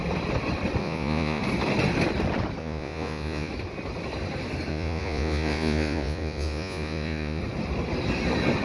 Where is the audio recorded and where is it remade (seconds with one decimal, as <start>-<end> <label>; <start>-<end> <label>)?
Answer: 0.0-0.8 recorded; 0.8-1.4 remade; 1.4-2.6 recorded; 2.6-3.5 remade; 3.5-4.7 recorded; 4.7-7.4 remade; 7.4-8.6 recorded

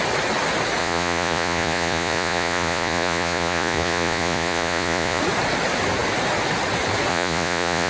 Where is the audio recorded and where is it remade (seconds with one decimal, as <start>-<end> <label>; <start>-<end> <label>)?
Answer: 0.0-0.8 recorded; 0.8-5.2 remade; 5.2-7.1 recorded; 7.1-7.9 remade

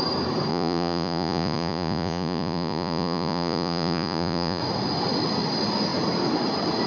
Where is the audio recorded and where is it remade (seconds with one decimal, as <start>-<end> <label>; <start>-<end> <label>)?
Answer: 0.0-0.5 recorded; 0.5-4.6 remade; 4.6-6.9 recorded

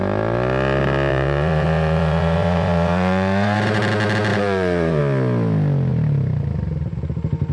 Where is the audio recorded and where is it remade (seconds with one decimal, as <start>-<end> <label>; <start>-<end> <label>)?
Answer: 0.0-1.1 recorded; 1.1-3.8 remade; 3.8-4.3 recorded; 4.3-5.0 remade; 5.0-7.5 recorded

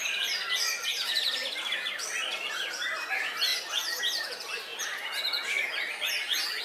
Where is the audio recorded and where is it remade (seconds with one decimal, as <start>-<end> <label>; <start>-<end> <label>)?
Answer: 0.0-6.6 recorded

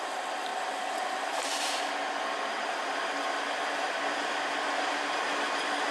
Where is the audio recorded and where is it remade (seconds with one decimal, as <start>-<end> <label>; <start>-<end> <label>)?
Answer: 0.0-5.9 recorded

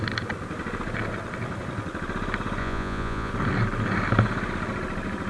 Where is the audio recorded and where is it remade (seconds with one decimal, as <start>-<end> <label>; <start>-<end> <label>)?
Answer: 0.0-2.6 recorded; 2.6-3.3 remade; 3.3-5.3 recorded